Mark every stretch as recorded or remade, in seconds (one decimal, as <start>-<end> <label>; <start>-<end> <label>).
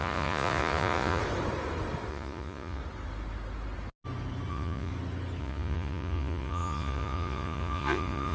0.0-1.2 remade; 1.2-2.1 recorded; 2.1-2.8 remade; 2.8-4.5 recorded; 4.5-4.9 remade; 4.9-5.4 recorded; 5.4-8.3 remade